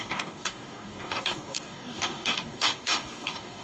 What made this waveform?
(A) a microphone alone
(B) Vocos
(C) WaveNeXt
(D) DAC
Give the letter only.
D